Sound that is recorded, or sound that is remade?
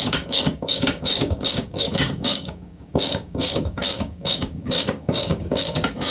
remade